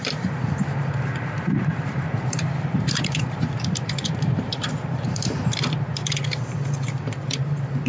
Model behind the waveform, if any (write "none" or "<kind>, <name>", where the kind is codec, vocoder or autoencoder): vocoder, BigVGAN v2